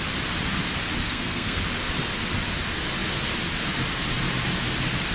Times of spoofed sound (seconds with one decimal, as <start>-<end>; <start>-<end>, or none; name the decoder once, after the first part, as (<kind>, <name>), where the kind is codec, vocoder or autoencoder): 1.0-1.6 (codec, SNAC)